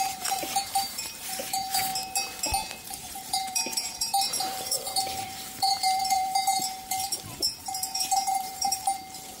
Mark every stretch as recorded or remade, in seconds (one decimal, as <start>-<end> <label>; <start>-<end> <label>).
0.0-1.9 remade; 1.9-2.8 recorded; 2.8-6.6 remade; 6.6-7.6 recorded; 7.6-8.8 remade; 8.8-9.4 recorded